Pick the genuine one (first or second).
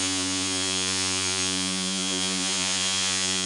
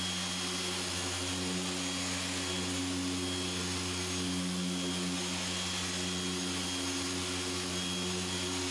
second